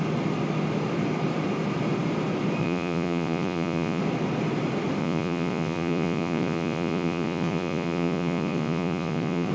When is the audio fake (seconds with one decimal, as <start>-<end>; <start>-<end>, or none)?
2.6-4.0; 5.0-9.5